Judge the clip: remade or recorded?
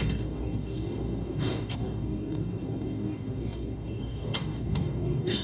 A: remade